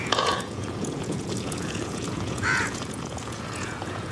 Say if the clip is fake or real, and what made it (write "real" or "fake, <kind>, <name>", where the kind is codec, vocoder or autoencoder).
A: fake, vocoder, Vocos